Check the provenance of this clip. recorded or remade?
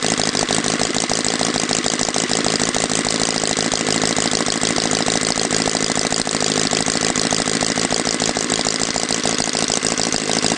recorded